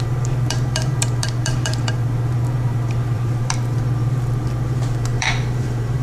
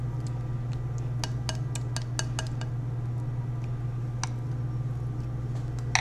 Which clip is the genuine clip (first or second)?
second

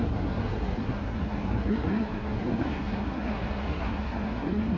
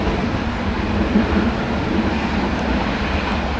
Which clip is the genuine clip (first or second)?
second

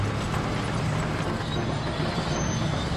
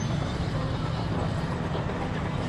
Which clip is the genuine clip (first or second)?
first